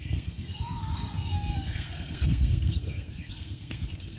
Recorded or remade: remade